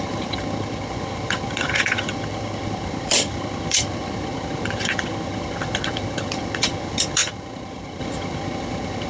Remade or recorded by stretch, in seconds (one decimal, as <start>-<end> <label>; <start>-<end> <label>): 0.0-9.1 remade